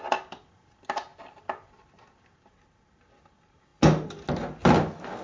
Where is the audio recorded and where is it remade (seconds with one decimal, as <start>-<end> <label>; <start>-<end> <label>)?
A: 0.0-5.2 recorded

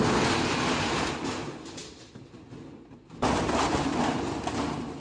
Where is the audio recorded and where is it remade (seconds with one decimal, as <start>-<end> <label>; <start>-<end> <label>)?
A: 0.0-5.0 recorded

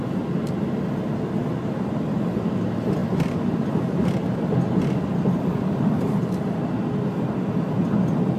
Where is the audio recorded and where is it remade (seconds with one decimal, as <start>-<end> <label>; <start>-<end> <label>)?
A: 0.0-8.4 recorded

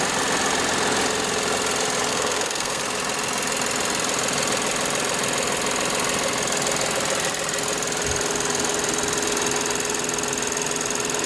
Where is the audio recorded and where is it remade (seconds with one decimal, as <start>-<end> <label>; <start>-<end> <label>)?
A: 0.0-2.1 recorded; 2.1-2.8 remade; 2.8-11.3 recorded